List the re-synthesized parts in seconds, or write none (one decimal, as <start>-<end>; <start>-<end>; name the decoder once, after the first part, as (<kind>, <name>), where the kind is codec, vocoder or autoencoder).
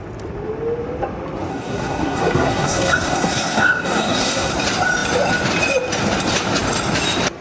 1.5-4.5 (codec, SNAC)